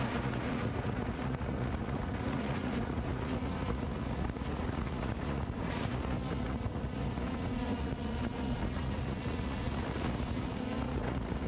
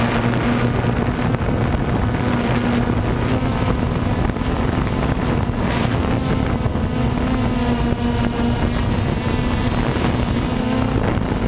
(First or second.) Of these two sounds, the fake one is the first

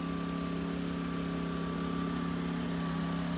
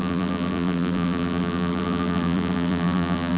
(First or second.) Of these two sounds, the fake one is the second